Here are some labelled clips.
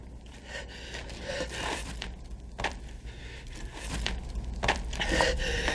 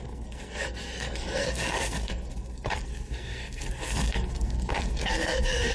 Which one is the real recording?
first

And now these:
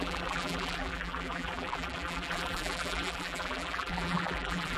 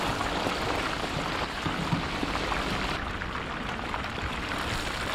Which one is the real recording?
second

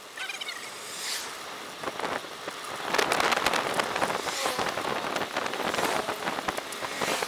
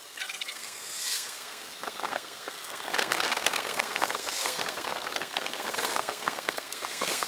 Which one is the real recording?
first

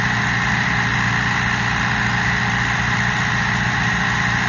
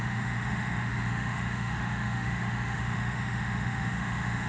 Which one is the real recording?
first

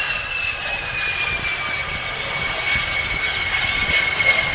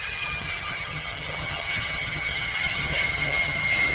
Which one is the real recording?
first